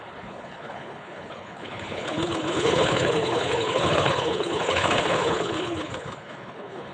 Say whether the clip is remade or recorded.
remade